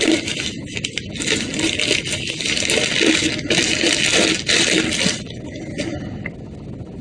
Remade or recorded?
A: recorded